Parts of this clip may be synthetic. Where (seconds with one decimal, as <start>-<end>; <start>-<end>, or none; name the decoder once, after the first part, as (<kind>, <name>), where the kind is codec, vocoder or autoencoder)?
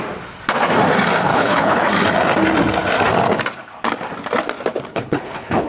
1.3-1.9 (codec, HILCodec); 4.9-5.7